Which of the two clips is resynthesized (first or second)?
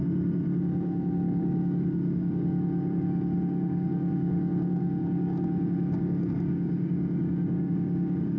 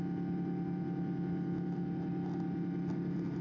first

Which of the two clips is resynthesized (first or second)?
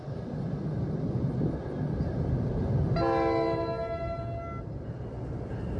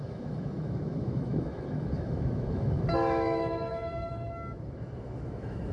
second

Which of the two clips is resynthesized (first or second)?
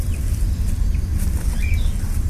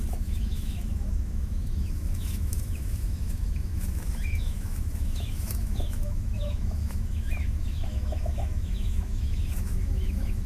second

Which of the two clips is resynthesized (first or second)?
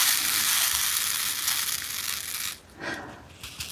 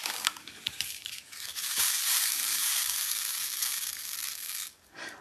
second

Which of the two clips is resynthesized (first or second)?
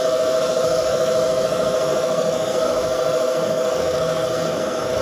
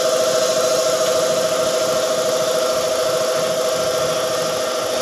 first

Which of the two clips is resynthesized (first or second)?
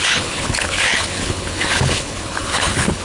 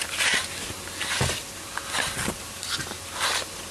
first